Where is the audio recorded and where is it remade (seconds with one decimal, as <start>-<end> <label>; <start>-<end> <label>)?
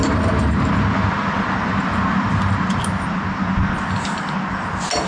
0.0-5.1 recorded